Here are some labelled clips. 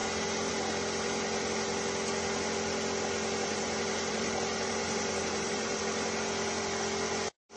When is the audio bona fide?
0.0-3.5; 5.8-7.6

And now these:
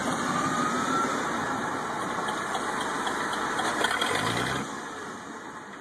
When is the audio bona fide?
0.0-5.8

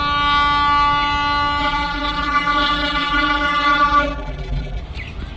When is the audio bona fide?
0.0-1.6; 4.8-5.4

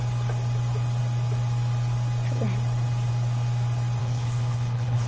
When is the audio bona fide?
0.0-4.0